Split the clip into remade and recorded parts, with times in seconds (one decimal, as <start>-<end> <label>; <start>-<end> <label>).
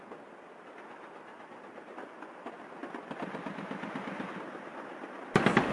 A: 0.0-5.7 recorded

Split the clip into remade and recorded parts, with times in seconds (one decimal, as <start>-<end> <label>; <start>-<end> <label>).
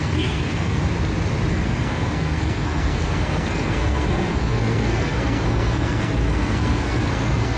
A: 0.0-0.8 remade; 0.8-1.5 recorded; 1.5-7.6 remade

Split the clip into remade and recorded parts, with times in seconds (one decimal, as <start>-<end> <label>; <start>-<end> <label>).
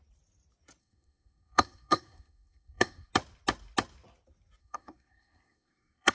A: 0.0-0.8 recorded; 0.8-3.1 remade; 3.1-4.6 recorded; 4.6-6.1 remade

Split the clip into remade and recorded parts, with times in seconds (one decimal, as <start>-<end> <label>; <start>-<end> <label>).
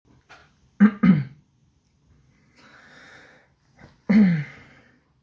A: 0.0-5.2 recorded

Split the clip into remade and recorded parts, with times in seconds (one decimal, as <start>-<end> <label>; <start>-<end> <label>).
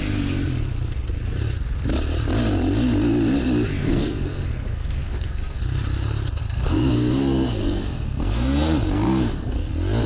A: 0.0-3.8 recorded; 3.8-5.6 remade; 5.6-6.4 recorded; 6.4-9.7 remade; 9.7-10.1 recorded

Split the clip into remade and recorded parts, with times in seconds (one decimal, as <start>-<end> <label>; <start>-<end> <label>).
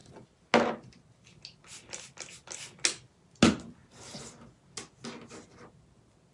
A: 0.0-6.3 recorded